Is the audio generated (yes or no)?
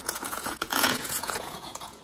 yes